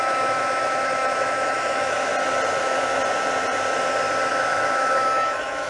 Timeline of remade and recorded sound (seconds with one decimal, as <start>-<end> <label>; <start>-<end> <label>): 0.0-2.1 remade; 2.1-2.6 recorded; 2.6-3.0 remade; 3.0-4.3 recorded; 4.3-5.7 remade